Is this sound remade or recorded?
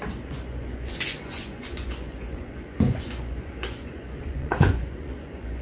remade